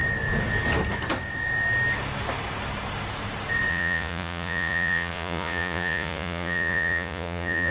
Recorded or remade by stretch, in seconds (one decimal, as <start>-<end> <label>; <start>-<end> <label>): 0.0-3.7 recorded; 3.7-7.7 remade